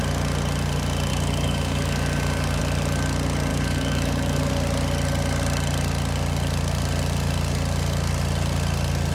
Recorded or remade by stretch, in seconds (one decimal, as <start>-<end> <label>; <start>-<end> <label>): 0.0-1.1 recorded; 1.1-2.6 remade; 2.6-3.5 recorded; 3.5-4.5 remade; 4.5-9.1 recorded